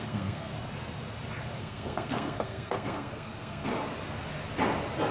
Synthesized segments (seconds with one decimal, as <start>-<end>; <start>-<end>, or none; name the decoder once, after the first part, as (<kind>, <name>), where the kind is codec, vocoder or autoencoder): 0.0-0.5 (codec, SNAC); 1.6-3.7

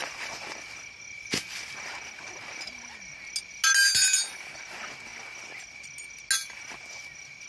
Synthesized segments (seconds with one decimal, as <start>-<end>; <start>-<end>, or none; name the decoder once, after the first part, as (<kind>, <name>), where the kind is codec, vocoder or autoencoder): none